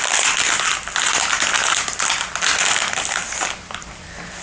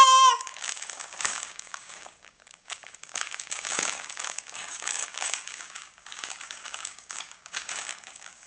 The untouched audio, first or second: first